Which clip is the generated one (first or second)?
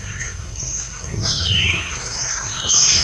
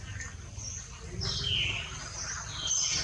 first